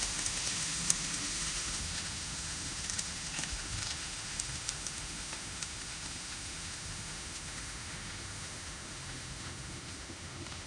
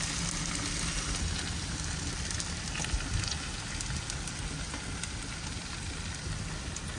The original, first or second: second